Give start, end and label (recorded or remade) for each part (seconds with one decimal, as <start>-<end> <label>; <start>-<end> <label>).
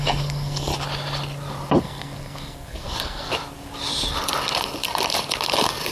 0.0-0.7 remade; 0.7-1.8 recorded; 1.8-3.3 remade; 3.3-5.9 recorded